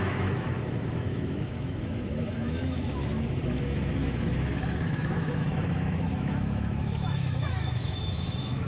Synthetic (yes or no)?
yes